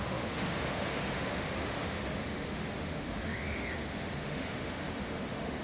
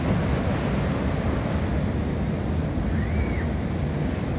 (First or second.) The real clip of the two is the second